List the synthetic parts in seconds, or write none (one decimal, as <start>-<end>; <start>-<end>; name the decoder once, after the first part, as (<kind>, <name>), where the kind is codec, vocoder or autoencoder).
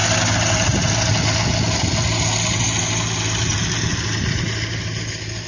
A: none